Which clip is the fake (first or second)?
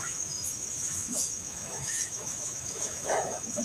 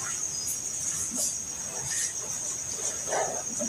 first